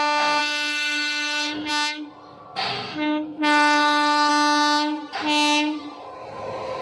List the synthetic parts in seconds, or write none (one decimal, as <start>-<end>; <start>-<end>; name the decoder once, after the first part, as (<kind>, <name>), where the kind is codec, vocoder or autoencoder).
0.4-1.7 (codec, SNAC); 2.7-4.3

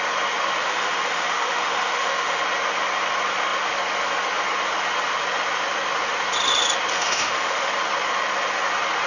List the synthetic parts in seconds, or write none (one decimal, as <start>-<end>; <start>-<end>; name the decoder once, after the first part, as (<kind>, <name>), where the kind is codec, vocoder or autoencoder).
0.6-2.4 (autoencoder, DAC-VAE); 6.9-7.7

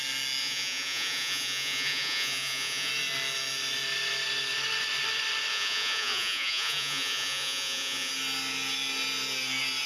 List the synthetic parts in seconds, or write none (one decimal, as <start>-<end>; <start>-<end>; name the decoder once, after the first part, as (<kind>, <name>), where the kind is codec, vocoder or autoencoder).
0.4-2.9 (vocoder, Vocos); 5.5-8.1

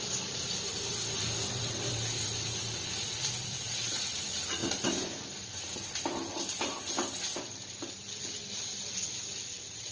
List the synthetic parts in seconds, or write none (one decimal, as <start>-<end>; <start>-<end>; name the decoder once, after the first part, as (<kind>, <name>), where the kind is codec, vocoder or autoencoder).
0.0-4.6 (vocoder, BigVGAN v2); 6.4-9.9

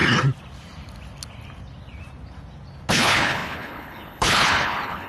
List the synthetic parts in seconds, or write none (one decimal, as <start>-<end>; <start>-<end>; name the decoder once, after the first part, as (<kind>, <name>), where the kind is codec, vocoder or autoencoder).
2.9-5.1 (codec, HILCodec)

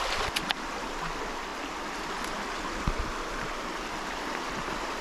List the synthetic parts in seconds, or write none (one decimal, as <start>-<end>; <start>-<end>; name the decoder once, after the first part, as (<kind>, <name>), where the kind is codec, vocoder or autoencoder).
none

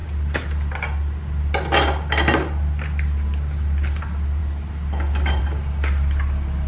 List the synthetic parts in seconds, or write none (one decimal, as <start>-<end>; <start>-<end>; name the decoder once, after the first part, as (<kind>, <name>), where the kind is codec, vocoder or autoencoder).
none

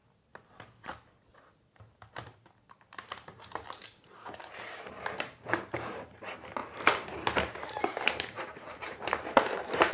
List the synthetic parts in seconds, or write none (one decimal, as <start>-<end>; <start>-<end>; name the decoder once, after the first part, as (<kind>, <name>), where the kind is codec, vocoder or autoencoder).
1.4-9.9 (vocoder, BigVGAN v2)